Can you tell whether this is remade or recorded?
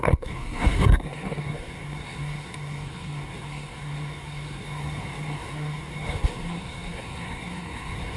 remade